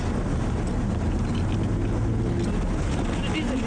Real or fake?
real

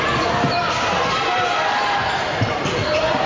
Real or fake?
fake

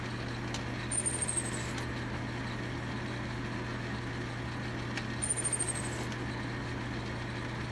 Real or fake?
real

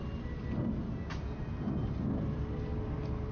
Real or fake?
real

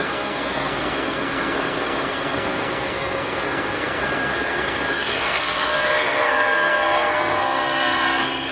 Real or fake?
fake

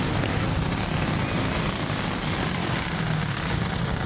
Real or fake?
real